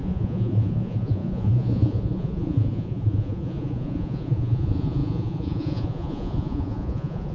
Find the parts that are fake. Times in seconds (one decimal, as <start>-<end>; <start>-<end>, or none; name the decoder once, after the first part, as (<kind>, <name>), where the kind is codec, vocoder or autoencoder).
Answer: 0.0-7.3 (vocoder, Vocos)